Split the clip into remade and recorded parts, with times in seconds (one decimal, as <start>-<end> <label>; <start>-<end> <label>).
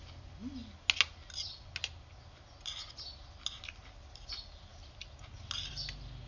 0.0-6.3 recorded